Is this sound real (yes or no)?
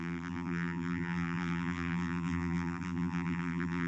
no